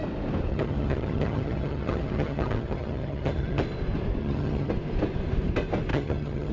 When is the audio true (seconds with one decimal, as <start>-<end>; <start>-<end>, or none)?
0.0-0.5; 3.6-4.2; 4.7-5.9